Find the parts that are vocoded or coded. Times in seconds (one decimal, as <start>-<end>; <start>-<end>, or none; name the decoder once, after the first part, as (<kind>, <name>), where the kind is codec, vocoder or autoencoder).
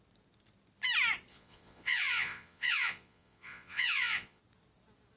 1.3-4.4 (vocoder, Vocos)